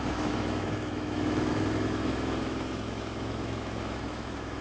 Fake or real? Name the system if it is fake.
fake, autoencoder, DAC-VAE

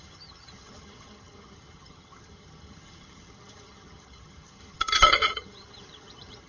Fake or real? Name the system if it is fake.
fake, vocoder, HiFi-GAN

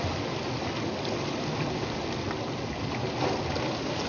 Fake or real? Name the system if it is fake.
real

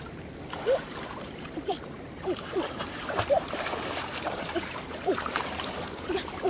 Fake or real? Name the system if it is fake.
fake, vocoder, BigVGAN v2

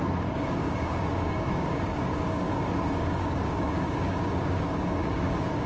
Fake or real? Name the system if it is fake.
fake, codec, DAC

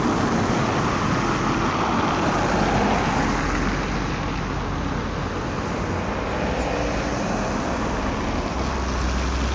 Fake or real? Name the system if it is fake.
real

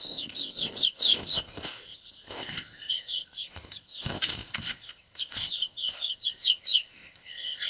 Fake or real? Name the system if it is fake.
fake, codec, ZipCodec